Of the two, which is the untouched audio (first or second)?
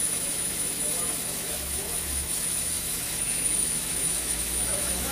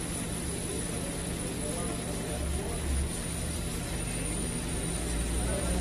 second